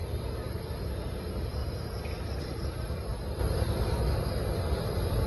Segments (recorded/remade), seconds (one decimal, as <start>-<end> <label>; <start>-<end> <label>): 0.0-1.6 remade; 1.6-2.4 recorded; 2.4-3.1 remade; 3.1-4.2 recorded; 4.2-5.3 remade